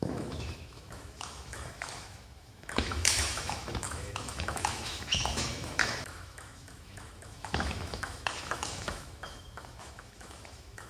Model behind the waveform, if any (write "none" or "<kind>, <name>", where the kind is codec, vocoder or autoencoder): autoencoder, DAC-VAE